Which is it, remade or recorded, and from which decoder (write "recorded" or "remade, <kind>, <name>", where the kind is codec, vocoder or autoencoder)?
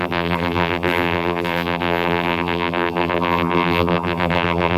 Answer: remade, vocoder, BigVGAN v2